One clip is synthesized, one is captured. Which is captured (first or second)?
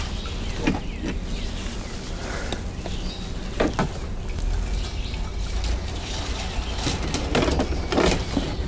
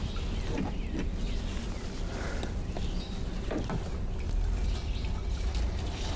first